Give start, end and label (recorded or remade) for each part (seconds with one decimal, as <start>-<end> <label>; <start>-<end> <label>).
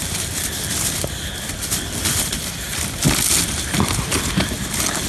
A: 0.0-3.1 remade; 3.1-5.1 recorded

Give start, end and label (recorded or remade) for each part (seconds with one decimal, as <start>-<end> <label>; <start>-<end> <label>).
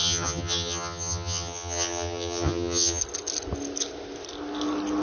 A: 0.0-3.0 remade; 3.0-5.0 recorded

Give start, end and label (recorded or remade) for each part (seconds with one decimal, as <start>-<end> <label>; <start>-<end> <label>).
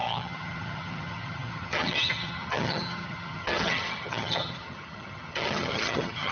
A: 0.0-6.3 remade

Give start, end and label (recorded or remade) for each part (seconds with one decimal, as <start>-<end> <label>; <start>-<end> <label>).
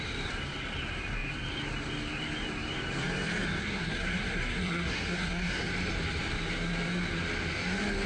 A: 0.0-3.6 recorded; 3.6-5.7 remade; 5.7-8.1 recorded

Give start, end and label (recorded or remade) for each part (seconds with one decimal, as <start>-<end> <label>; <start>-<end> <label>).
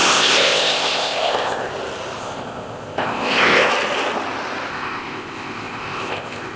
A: 0.0-1.7 remade; 1.7-2.2 recorded; 2.2-3.7 remade; 3.7-4.7 recorded; 4.7-6.6 remade